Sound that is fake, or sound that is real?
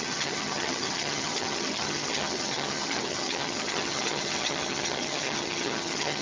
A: fake